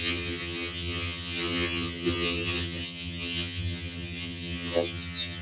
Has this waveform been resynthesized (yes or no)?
yes